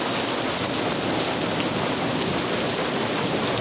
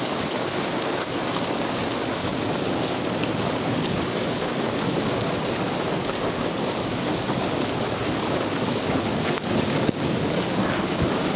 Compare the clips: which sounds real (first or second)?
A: first